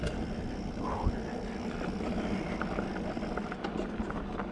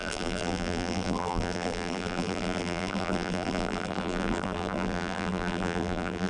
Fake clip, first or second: second